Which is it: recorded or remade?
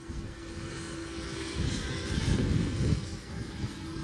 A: remade